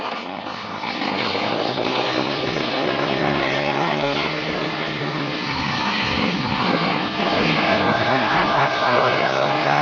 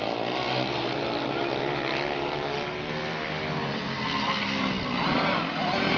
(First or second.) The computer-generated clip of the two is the first